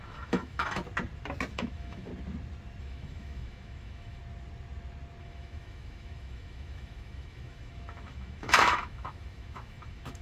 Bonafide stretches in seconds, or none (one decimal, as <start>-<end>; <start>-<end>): 0.8-1.5; 2.1-2.8; 4.2-5.2